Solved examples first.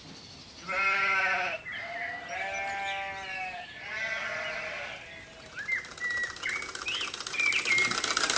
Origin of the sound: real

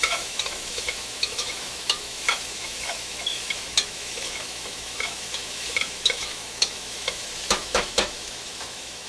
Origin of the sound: fake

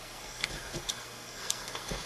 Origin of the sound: fake